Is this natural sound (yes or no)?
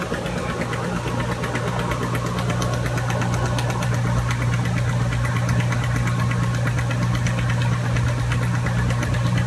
yes